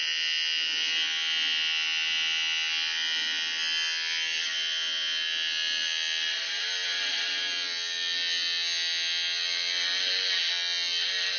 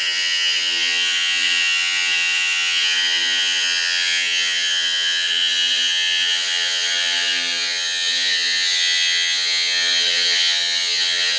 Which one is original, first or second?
first